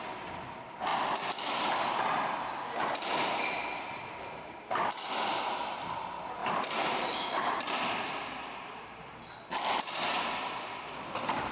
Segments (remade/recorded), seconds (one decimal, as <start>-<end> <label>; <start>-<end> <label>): 0.0-6.4 recorded; 6.4-8.8 remade; 8.8-11.5 recorded